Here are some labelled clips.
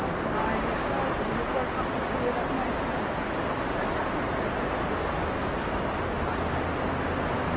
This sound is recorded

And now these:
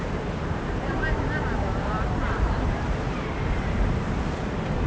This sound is remade